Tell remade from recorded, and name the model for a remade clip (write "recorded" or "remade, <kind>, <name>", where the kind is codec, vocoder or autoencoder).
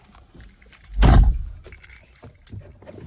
recorded